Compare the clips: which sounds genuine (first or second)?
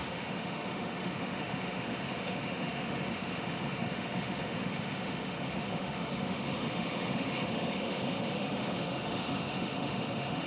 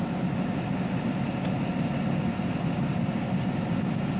second